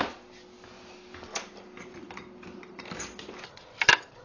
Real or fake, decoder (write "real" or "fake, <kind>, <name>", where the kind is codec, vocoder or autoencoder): real